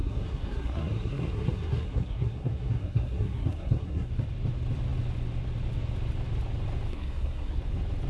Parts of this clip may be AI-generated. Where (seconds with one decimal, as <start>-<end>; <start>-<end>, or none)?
0.0-4.1; 6.9-7.6